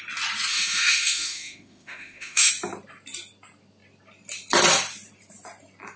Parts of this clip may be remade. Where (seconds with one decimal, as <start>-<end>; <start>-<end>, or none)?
0.5-2.5